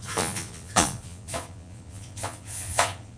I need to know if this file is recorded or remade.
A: remade